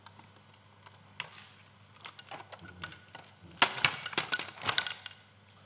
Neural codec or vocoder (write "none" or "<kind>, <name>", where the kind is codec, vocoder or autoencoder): none